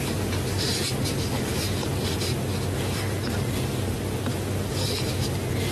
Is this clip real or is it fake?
real